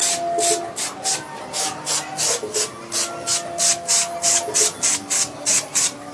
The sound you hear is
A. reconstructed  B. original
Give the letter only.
B